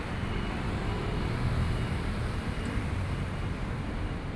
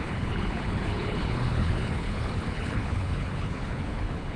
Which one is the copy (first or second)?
second